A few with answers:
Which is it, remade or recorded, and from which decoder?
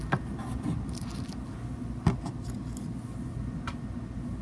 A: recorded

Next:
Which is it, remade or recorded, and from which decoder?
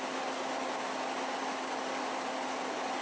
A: recorded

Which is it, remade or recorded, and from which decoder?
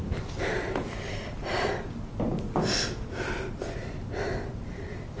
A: recorded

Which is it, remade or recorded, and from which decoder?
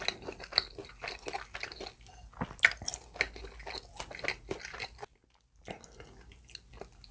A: recorded